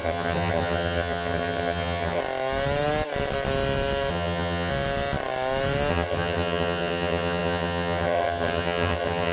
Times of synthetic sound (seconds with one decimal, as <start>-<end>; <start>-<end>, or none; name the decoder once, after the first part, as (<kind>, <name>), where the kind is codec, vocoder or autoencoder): 0.0-2.2 (vocoder, HiFi-GAN); 4.1-4.7; 5.9-9.3